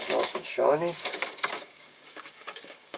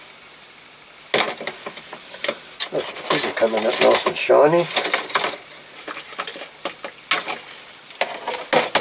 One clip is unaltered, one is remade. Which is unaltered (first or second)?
second